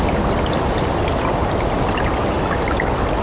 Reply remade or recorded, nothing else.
recorded